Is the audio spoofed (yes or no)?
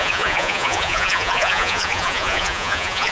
yes